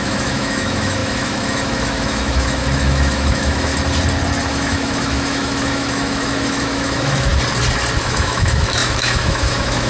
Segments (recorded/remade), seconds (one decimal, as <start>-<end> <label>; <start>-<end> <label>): 0.0-3.7 remade; 3.7-4.5 recorded; 4.5-7.3 remade; 7.3-8.0 recorded; 8.0-9.9 remade